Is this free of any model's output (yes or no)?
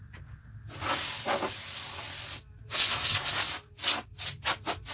yes